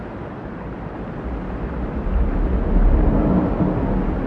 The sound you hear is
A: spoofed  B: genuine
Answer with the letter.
B